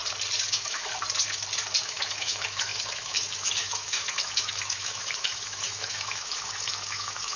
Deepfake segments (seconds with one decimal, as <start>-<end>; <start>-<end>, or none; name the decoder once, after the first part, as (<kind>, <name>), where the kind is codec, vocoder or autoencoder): 0.5-0.9 (autoencoder, DAC-VAE); 1.8-7.4